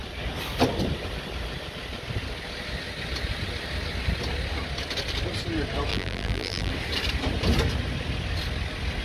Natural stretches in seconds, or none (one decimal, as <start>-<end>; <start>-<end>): 0.0-5.9; 6.7-9.0